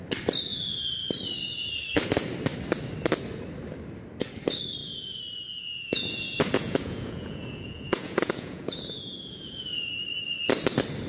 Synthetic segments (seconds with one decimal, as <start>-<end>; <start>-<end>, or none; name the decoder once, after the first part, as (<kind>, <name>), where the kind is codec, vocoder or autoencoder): 4.8-9.9 (vocoder, Vocos)